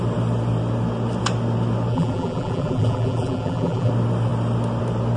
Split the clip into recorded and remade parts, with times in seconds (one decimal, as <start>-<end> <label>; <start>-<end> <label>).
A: 0.0-1.9 recorded; 1.9-3.9 remade; 3.9-5.2 recorded